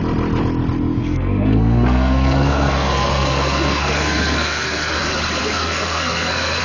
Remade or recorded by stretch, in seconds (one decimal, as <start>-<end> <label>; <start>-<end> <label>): 0.0-1.0 recorded; 1.0-5.0 remade; 5.0-5.4 recorded; 5.4-6.6 remade